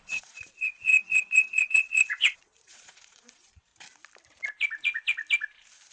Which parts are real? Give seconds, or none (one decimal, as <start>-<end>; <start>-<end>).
3.7-5.9